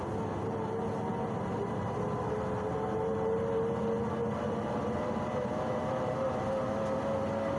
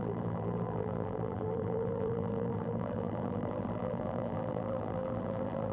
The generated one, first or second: second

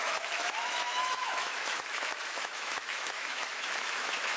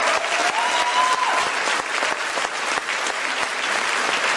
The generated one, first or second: first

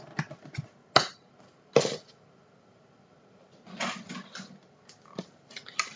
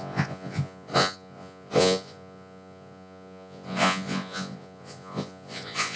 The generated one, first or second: second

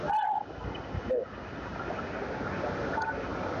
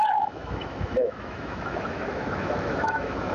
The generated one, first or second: second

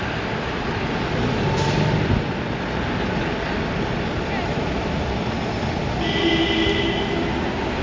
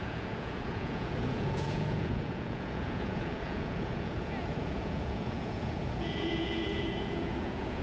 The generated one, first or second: second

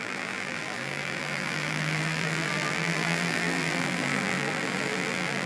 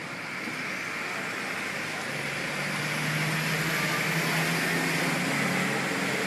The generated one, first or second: first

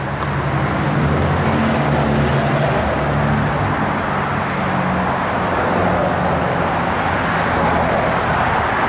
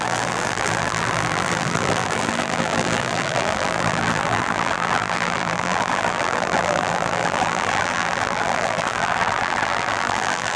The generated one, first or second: second